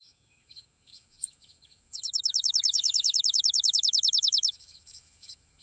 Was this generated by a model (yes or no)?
yes